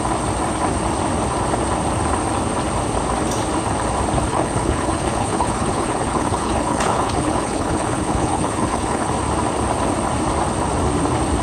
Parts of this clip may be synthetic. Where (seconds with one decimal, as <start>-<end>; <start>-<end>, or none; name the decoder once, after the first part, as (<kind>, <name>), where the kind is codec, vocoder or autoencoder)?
4.3-9.1 (codec, HILCodec)